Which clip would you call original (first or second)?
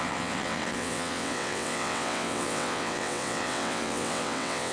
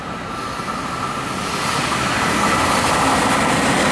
second